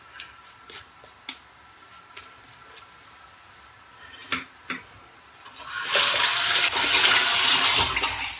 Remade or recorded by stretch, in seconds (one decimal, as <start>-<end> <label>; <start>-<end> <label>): 0.0-8.4 recorded